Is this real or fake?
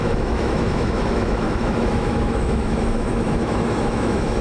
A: fake